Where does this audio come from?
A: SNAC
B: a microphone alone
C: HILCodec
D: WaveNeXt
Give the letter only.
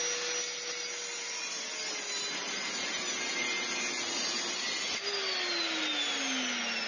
B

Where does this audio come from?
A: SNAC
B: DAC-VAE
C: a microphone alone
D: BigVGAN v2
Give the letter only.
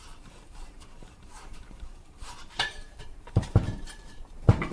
D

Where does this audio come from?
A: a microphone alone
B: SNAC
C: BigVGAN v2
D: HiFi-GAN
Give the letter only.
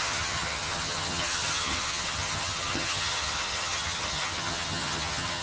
D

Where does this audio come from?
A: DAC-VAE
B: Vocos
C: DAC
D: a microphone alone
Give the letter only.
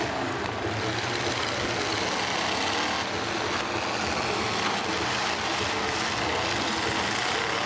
D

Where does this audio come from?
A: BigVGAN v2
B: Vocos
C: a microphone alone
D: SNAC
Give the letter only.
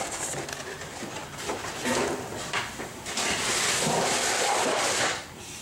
A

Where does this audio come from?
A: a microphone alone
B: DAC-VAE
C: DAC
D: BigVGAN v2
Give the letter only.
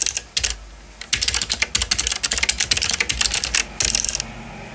A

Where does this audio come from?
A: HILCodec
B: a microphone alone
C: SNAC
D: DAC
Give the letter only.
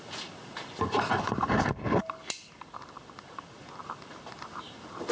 B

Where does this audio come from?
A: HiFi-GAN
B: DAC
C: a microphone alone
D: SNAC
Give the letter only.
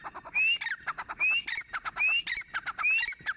C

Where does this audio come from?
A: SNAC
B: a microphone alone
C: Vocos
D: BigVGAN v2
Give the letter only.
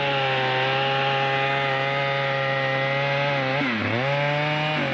B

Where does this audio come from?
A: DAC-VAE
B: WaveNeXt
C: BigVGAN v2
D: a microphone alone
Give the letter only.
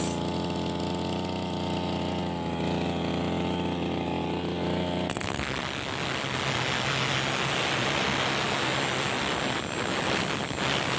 D